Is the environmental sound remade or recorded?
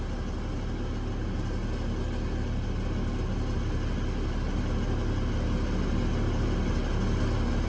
recorded